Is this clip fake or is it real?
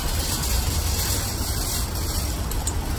real